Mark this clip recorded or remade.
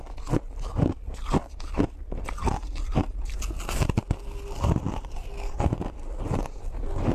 recorded